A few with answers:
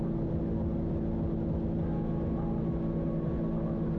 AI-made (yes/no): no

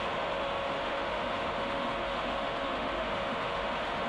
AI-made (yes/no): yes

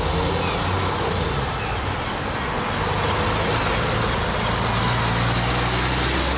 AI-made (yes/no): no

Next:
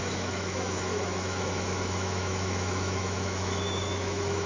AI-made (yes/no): yes